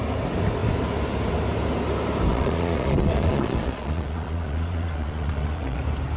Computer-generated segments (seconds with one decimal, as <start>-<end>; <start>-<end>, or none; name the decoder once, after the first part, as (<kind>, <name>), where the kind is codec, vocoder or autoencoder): 2.3-5.8 (vocoder, Vocos)